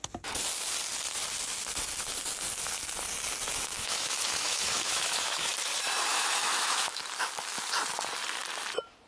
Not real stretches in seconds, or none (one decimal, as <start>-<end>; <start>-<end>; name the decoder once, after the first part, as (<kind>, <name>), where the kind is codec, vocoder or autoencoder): 3.5-5.5 (autoencoder, DAC-VAE); 6.1-7.0

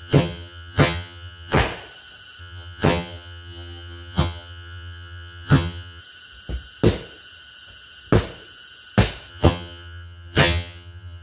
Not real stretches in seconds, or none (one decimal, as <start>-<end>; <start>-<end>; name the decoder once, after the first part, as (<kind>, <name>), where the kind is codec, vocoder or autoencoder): 0.0-1.6 (vocoder, HiFi-GAN); 2.4-6.0; 9.3-11.2

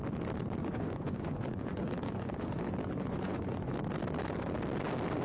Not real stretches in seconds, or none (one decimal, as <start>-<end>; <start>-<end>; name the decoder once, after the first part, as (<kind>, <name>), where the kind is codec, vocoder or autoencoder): 0.6-3.7 (vocoder, Vocos)

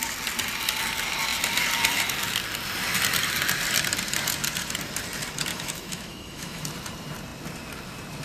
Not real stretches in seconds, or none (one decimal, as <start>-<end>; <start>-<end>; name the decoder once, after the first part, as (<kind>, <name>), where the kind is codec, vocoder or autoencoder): 5.5-6.6 (autoencoder, DAC-VAE)

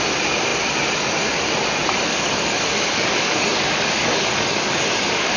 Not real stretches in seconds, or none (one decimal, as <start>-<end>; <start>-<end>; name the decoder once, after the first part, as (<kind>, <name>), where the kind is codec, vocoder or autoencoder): 2.1-5.4 (codec, DAC)

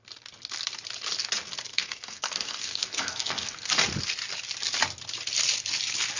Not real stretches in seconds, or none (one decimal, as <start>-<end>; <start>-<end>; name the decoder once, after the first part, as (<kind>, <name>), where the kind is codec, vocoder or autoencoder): 1.7-3.7 (codec, SNAC)

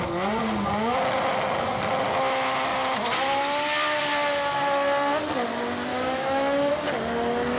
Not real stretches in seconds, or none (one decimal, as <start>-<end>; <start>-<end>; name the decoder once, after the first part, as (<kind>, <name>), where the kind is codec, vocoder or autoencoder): 5.9-6.7 (autoencoder, DAC-VAE)